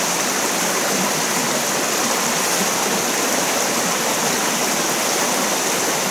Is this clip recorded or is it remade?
recorded